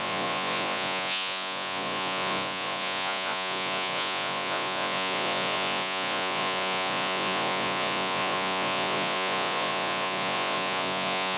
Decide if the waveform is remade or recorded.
remade